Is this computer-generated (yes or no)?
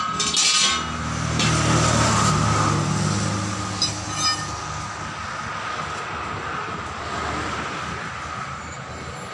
no